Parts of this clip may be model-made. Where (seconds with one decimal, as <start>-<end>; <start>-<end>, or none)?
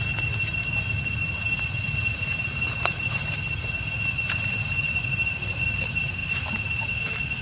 0.0-7.4